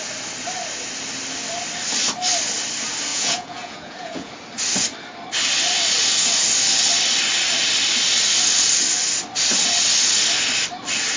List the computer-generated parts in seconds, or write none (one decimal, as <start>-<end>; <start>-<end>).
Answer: 3.1-4.3